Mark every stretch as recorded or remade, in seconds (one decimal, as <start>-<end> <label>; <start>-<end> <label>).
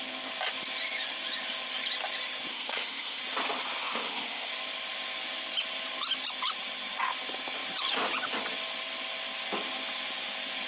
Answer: 0.0-2.5 recorded; 2.5-3.2 remade; 3.2-3.8 recorded; 3.8-4.5 remade; 4.5-10.7 recorded